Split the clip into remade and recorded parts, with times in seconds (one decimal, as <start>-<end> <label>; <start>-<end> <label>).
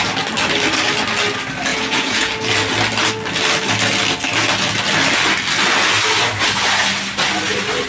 0.0-1.7 recorded; 1.7-2.3 remade; 2.3-7.9 recorded